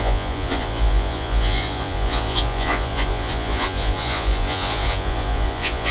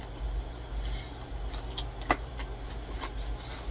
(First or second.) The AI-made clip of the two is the first